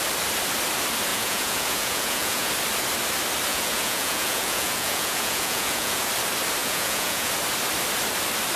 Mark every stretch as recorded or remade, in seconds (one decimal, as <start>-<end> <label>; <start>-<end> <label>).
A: 0.0-1.1 recorded; 1.1-2.5 remade; 2.5-3.5 recorded; 3.5-6.1 remade; 6.1-6.6 recorded; 6.6-7.3 remade; 7.3-8.6 recorded